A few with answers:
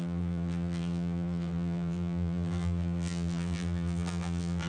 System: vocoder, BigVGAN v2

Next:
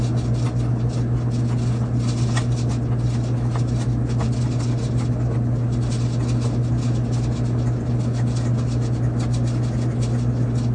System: none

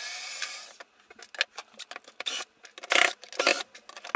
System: none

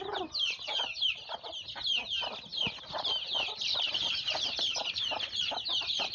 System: none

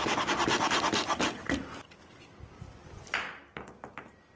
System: vocoder, BigVGAN v2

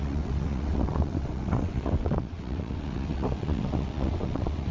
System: vocoder, WaveNeXt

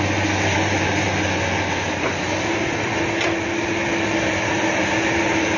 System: none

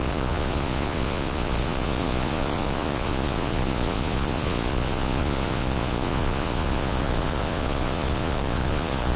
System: vocoder, Vocos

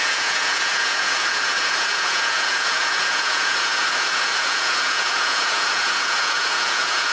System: vocoder, Vocos